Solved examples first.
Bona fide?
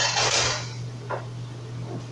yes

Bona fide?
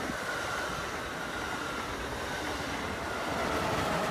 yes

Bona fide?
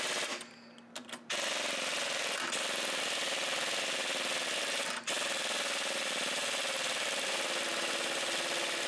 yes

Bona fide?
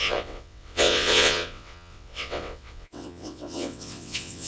no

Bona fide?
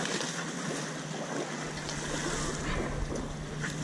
yes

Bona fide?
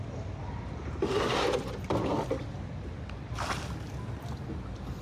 yes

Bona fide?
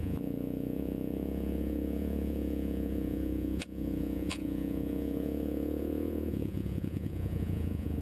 no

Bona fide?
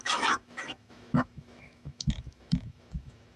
no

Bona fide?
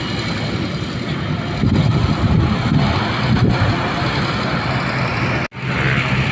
yes